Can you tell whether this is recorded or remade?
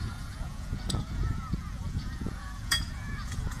remade